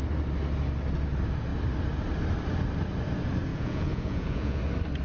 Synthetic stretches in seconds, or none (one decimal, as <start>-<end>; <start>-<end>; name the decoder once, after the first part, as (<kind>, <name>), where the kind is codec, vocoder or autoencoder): 3.5-4.6 (vocoder, Vocos)